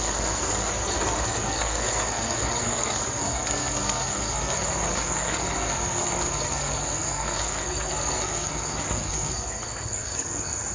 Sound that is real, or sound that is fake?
fake